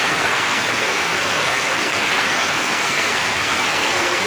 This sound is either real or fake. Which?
fake